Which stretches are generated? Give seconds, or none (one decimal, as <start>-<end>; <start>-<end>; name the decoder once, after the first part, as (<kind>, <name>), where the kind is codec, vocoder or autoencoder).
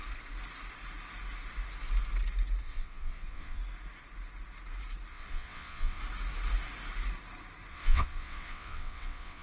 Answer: 2.6-3.6 (vocoder, WaveNeXt); 5.1-6.0; 7.7-9.4